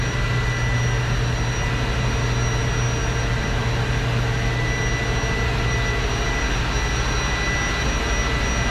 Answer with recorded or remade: recorded